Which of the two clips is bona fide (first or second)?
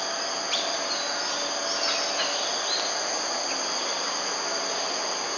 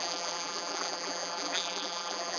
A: first